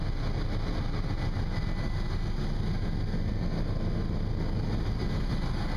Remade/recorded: recorded